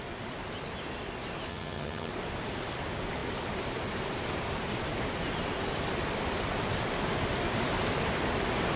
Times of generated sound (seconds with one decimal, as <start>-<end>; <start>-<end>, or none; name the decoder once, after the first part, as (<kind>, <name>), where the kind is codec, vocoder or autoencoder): 1.5-2.1 (vocoder, HiFi-GAN)